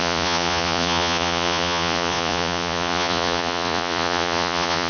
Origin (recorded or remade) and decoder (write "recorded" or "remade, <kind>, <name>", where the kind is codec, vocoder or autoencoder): remade, vocoder, Vocos